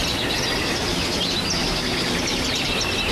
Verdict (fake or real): real